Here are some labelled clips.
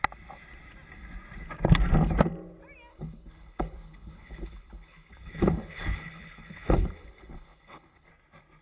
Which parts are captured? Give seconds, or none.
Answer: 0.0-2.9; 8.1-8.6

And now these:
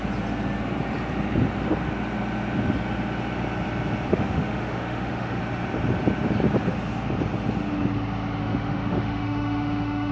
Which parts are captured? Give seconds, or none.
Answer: 0.0-4.1; 5.4-8.4

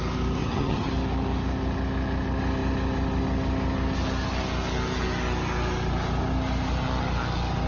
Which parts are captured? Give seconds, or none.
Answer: 0.0-0.4; 0.9-7.7

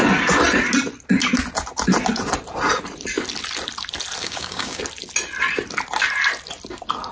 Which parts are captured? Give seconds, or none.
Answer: 0.0-4.2; 4.8-7.1

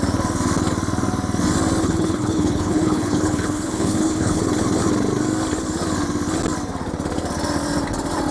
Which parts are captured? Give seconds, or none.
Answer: 0.0-1.8; 4.4-8.3